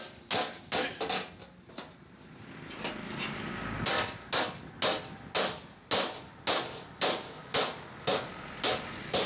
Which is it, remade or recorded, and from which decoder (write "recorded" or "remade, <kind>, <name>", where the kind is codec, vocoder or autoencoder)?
recorded